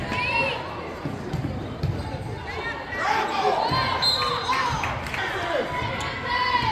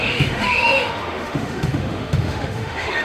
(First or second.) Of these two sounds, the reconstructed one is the second